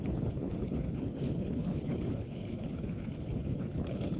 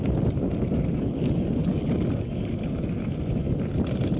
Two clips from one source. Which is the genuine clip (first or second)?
second